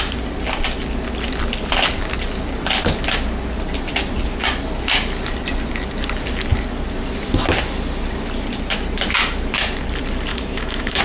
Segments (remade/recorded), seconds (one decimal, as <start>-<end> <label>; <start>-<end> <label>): 0.0-10.3 recorded; 10.3-11.0 remade